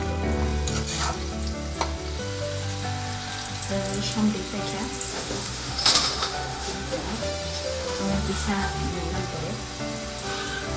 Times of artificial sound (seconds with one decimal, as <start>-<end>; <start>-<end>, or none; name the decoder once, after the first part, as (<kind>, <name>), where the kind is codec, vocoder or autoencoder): 5.1-8.9 (autoencoder, DAC-VAE)